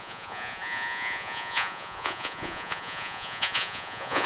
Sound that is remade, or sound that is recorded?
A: remade